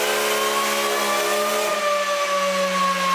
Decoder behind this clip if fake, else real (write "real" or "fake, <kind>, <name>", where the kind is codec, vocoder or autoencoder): real